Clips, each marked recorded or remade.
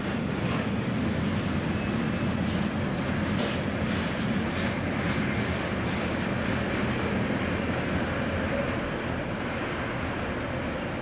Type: recorded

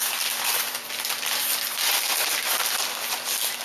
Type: recorded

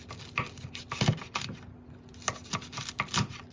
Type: recorded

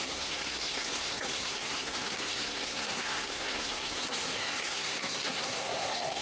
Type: remade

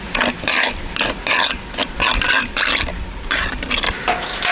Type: recorded